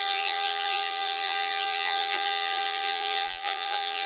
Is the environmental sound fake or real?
fake